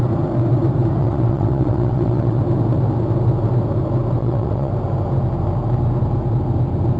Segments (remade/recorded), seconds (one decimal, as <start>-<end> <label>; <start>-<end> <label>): 0.0-1.0 recorded; 1.0-2.4 remade; 2.4-4.2 recorded; 4.2-4.7 remade; 4.7-7.0 recorded